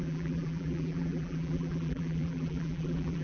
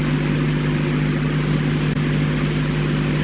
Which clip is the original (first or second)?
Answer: second